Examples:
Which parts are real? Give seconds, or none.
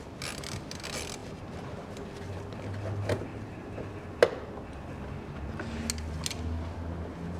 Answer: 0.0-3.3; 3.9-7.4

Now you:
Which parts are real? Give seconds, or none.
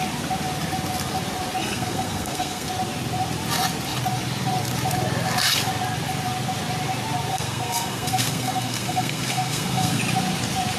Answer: 0.0-1.6; 2.7-7.3; 10.0-10.8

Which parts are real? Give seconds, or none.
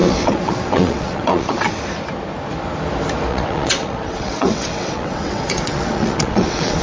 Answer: 1.8-3.3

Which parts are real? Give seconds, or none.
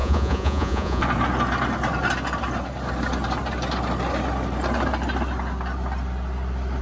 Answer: 1.0-6.8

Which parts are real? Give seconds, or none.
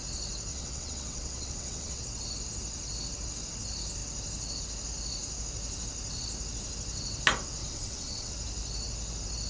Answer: 0.0-0.5; 2.0-7.6; 8.3-9.5